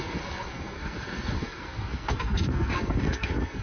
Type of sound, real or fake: fake